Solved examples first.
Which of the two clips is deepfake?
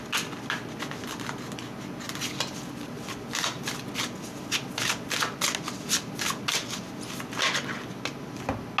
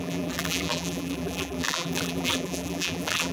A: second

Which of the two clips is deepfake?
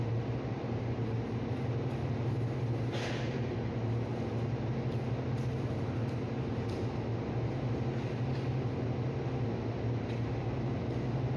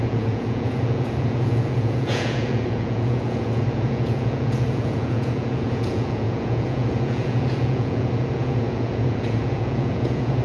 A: second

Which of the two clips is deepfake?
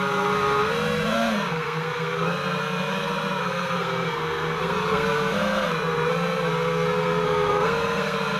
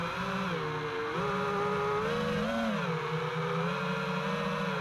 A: first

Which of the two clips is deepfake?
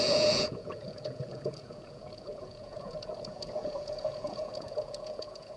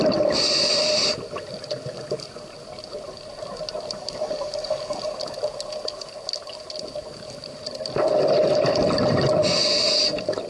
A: first